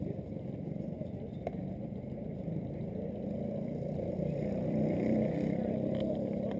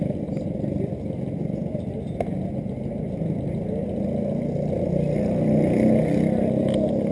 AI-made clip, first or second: first